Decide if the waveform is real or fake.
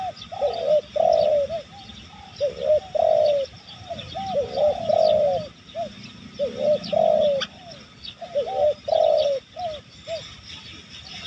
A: real